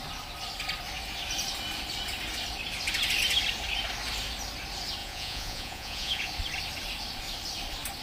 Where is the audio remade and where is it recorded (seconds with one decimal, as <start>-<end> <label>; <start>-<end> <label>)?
0.0-5.0 recorded; 5.0-6.3 remade; 6.3-8.0 recorded